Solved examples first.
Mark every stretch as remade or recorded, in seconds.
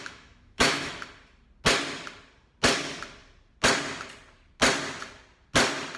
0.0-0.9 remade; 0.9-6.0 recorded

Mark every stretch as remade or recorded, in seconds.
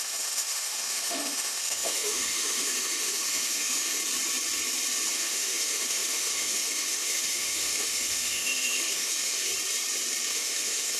0.0-4.0 remade; 4.0-5.1 recorded; 5.1-9.5 remade; 9.5-10.3 recorded; 10.3-11.0 remade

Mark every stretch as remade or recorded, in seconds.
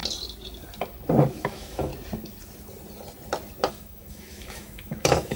0.0-1.3 recorded; 1.3-1.9 remade; 1.9-3.7 recorded; 3.7-5.4 remade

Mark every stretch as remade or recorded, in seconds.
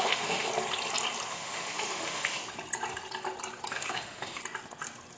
0.0-0.5 remade; 0.5-1.3 recorded; 1.3-2.4 remade; 2.4-3.7 recorded; 3.7-4.4 remade; 4.4-5.2 recorded